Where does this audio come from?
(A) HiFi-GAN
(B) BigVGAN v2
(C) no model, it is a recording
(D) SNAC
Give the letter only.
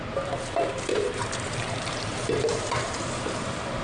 B